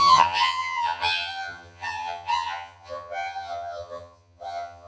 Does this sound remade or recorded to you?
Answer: remade